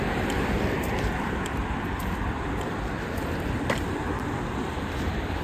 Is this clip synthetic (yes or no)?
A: yes